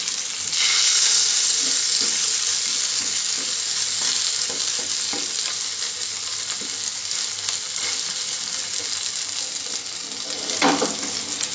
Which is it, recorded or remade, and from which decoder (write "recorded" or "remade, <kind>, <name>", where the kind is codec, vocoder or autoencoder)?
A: recorded